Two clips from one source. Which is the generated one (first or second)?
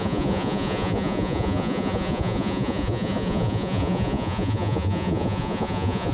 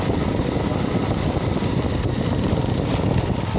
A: first